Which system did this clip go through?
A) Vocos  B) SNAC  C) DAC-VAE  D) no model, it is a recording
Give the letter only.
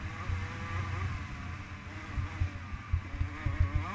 D